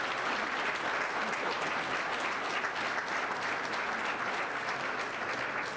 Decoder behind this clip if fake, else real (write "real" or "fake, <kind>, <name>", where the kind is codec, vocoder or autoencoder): real